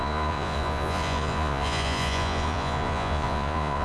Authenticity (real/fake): fake